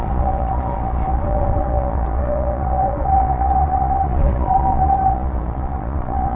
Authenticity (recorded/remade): remade